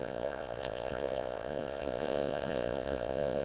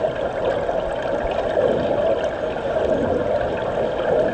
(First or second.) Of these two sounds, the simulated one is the first